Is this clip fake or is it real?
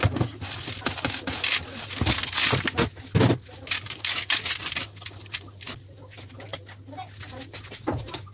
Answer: real